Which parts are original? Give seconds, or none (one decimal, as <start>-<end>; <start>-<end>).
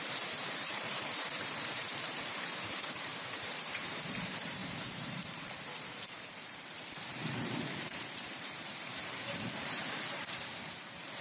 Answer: none